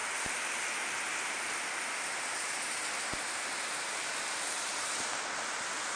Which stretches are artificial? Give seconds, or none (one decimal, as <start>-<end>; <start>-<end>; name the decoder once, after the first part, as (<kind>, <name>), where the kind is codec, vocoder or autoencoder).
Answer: none